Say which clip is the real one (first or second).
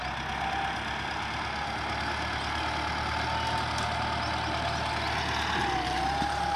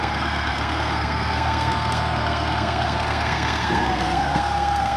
first